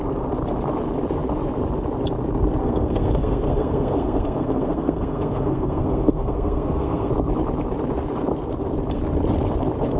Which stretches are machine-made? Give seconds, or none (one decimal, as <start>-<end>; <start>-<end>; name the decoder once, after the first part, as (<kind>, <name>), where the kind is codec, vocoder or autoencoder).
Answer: 2.6-7.1 (codec, SNAC)